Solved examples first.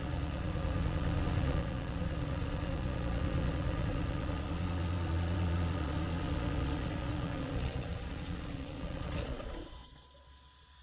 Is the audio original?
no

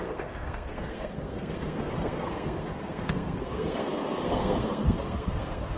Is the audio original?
no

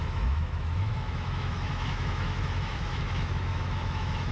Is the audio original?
no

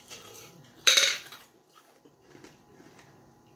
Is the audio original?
no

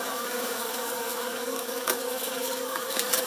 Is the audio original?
no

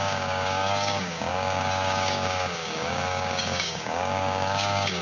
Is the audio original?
no